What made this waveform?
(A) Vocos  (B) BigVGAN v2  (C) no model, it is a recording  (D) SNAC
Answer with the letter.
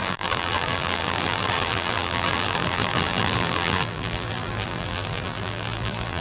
B